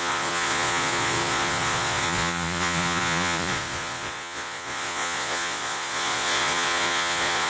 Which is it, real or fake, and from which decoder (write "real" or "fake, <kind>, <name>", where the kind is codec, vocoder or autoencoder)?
fake, vocoder, Vocos